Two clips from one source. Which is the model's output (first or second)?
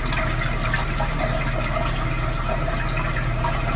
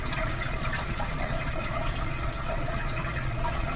second